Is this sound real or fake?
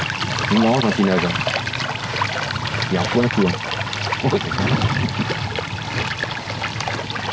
real